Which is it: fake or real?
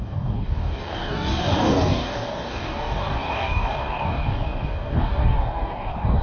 fake